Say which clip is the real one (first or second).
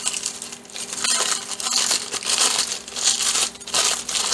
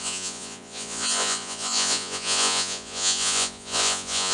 first